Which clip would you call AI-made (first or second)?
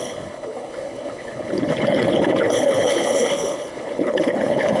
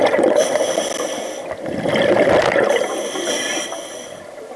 first